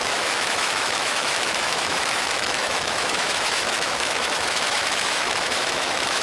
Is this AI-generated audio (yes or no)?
yes